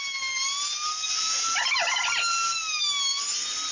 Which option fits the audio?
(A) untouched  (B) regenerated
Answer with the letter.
A